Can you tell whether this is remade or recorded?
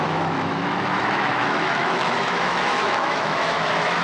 remade